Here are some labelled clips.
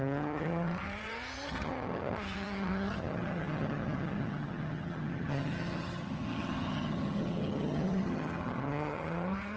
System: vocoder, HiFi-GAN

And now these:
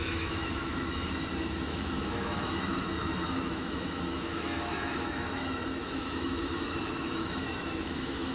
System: autoencoder, DAC-VAE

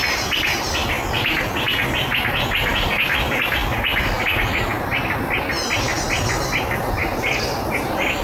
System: none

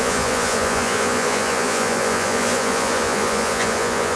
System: vocoder, Vocos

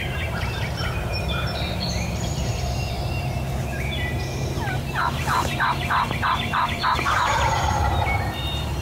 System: vocoder, BigVGAN v2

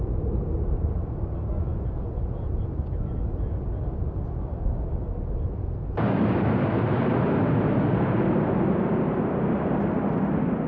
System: none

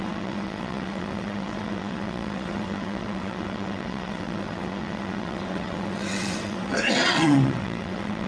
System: vocoder, WaveNeXt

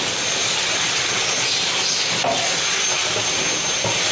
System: none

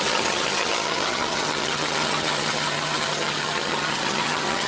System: vocoder, HiFi-GAN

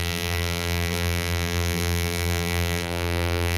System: vocoder, BigVGAN v2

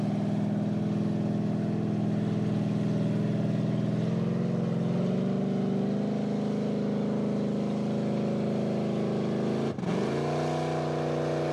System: none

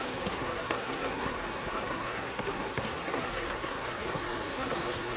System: codec, SNAC